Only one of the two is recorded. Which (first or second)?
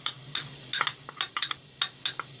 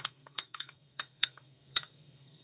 first